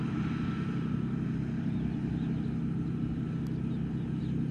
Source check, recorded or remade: recorded